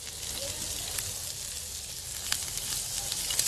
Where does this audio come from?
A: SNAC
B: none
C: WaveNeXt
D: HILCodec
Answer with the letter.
B